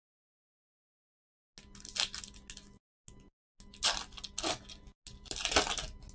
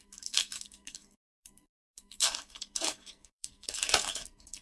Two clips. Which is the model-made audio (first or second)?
second